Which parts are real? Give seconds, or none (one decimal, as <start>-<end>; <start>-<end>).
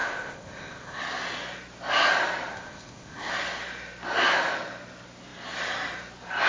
1.0-2.5; 3.3-6.5